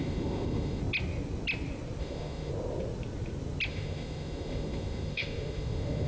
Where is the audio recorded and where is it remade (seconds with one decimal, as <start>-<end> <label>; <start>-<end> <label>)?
0.0-0.8 remade; 0.8-2.0 recorded; 2.0-2.5 remade; 2.5-3.7 recorded; 3.7-6.1 remade